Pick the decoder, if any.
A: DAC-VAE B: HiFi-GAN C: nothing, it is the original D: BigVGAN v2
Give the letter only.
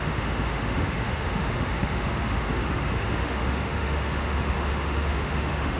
A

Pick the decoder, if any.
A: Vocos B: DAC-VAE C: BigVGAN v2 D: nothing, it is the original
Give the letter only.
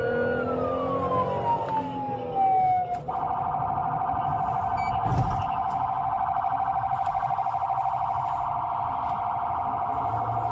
D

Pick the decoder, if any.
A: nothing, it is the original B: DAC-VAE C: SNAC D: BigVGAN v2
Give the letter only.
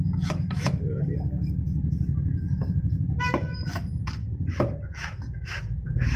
B